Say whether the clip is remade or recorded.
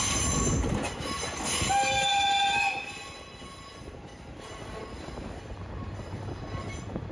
recorded